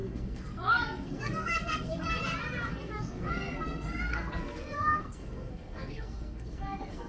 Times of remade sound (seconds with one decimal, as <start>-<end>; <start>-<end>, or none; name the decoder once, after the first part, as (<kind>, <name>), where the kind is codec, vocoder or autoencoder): 0.0-2.1 (codec, SNAC); 2.7-7.1